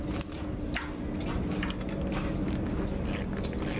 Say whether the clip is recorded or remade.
recorded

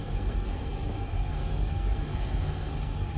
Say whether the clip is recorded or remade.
remade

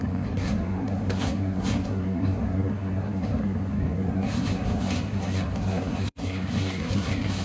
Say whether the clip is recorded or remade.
remade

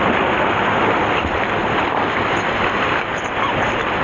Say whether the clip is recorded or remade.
recorded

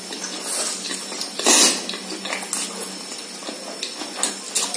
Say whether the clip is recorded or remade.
recorded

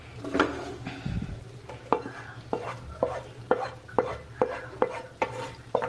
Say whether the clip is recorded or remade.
recorded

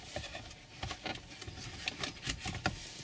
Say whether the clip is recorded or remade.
recorded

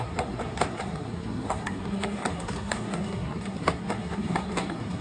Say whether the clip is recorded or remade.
remade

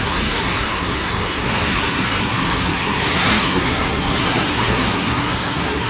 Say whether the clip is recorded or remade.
remade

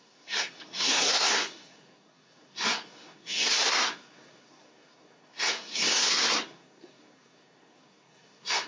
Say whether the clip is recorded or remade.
remade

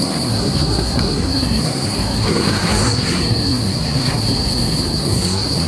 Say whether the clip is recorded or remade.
remade